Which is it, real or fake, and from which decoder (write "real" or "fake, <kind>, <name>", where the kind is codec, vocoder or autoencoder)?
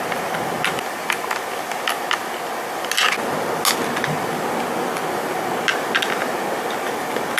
real